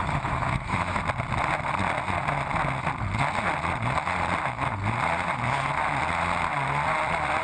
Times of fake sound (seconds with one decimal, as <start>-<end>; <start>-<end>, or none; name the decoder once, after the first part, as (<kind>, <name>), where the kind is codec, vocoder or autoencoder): 0.0-1.0 (autoencoder, DAC-VAE)